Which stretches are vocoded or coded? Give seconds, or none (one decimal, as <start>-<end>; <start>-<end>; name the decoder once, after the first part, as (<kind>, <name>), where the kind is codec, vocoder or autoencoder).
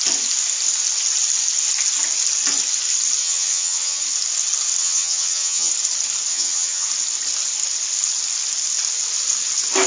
3.2-4.0 (vocoder, HiFi-GAN); 4.8-5.7; 6.3-6.9